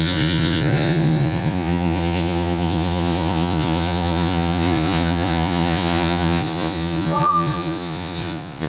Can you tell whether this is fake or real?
fake